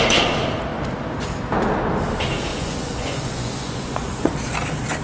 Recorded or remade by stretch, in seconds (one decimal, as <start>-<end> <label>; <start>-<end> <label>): 0.0-2.5 recorded; 2.5-4.3 remade; 4.3-5.0 recorded